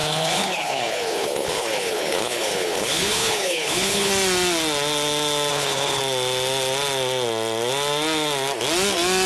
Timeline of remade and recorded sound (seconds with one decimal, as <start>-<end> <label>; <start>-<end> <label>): 0.0-4.1 remade; 4.1-5.5 recorded; 5.5-6.0 remade; 6.0-9.3 recorded